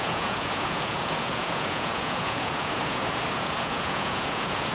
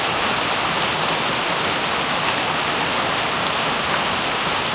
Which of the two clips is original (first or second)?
second